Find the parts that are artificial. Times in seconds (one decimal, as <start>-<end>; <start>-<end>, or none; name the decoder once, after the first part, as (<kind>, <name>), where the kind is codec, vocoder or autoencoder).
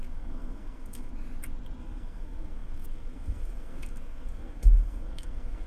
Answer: 0.0-1.1 (codec, SNAC); 1.8-5.7